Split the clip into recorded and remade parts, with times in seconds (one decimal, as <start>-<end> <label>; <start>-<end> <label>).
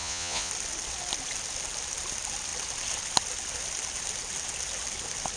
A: 0.0-0.5 remade; 0.5-5.4 recorded